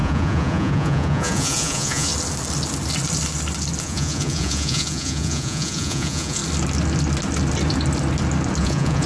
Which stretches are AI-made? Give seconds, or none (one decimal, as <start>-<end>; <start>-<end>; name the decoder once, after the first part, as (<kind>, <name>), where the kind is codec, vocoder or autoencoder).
0.0-2.1 (vocoder, Vocos); 3.8-6.4; 8.6-9.1